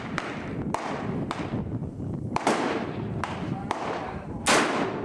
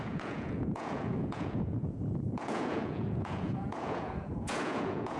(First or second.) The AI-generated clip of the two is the second